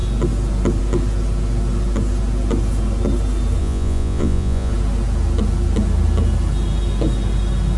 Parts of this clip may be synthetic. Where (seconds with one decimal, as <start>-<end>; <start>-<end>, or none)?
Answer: 3.6-4.7